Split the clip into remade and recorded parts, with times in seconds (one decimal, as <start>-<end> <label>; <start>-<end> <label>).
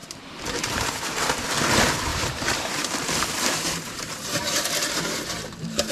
0.0-1.0 remade; 1.0-2.1 recorded; 2.1-5.9 remade